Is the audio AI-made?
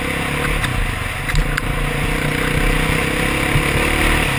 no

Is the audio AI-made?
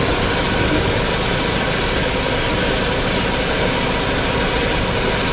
no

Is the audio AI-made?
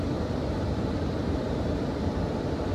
yes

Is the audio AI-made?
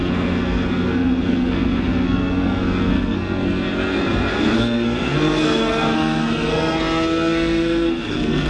yes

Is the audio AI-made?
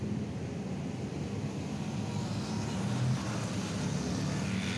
no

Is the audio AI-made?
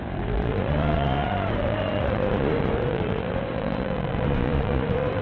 yes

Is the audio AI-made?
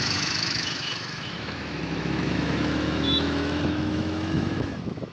yes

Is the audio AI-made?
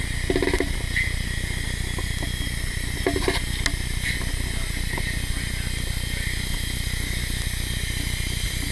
no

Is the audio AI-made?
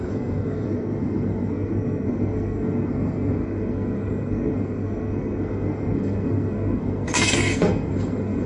yes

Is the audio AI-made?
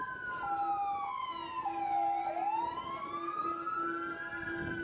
no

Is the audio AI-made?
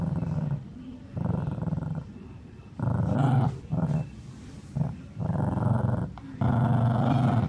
yes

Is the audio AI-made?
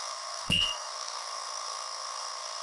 yes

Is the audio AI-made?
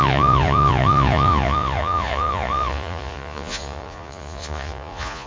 yes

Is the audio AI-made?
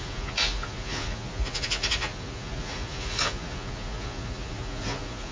yes